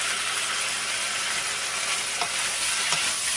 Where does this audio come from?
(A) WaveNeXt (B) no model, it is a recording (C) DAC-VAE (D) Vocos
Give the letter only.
B